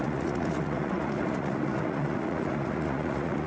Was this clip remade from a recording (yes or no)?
yes